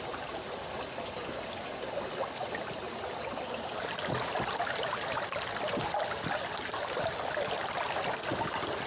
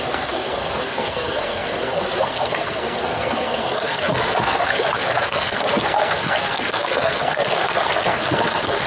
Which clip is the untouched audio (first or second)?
first